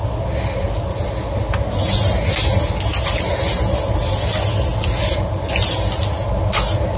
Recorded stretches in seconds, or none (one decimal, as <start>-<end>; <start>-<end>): 0.0-7.0